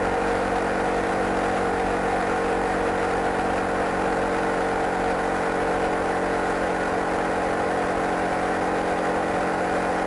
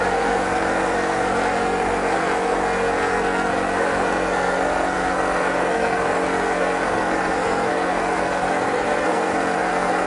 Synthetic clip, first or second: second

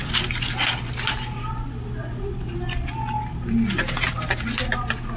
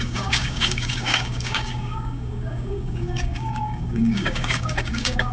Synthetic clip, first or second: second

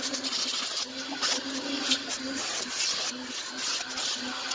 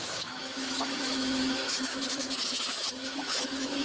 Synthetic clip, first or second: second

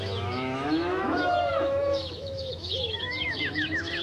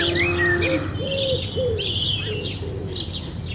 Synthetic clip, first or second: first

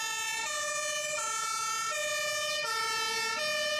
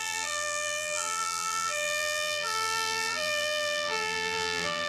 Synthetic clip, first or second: second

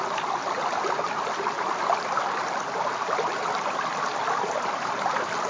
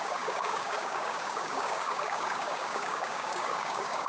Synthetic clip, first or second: second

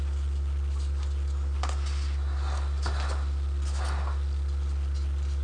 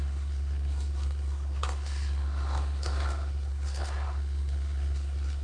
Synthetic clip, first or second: second